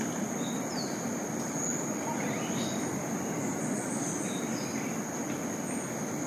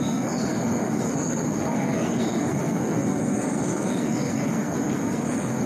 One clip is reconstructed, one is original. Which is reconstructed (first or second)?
second